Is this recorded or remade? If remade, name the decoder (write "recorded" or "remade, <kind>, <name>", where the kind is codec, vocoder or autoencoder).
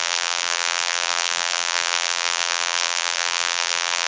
remade, vocoder, BigVGAN v2